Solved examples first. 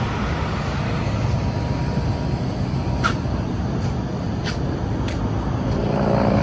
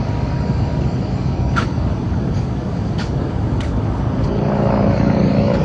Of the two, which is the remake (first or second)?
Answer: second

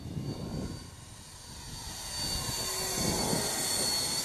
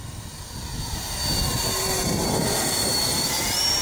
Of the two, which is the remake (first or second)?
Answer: second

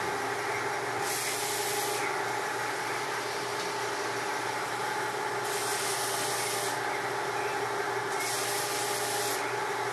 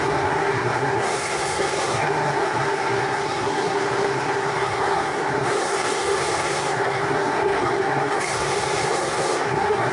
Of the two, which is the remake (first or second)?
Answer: second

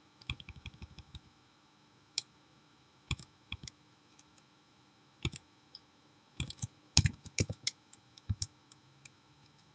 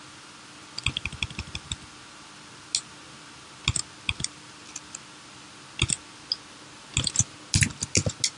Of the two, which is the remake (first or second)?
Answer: first